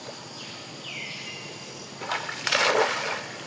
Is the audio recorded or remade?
recorded